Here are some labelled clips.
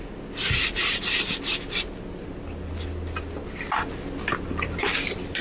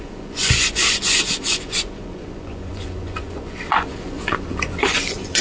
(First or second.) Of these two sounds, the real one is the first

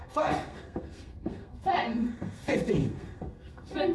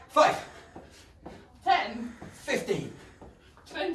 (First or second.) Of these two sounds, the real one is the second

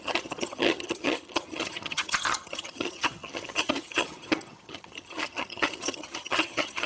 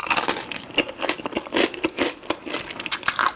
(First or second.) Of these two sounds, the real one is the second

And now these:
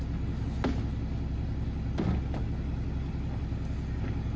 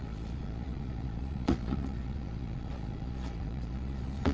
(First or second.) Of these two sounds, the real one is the first